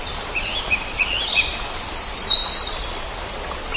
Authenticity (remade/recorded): recorded